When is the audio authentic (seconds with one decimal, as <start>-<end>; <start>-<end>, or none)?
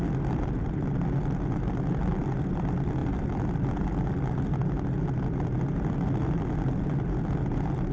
0.0-7.9